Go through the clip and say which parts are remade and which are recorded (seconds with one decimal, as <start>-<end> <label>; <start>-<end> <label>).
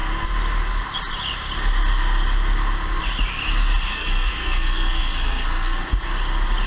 0.0-3.9 recorded; 3.9-5.8 remade; 5.8-6.7 recorded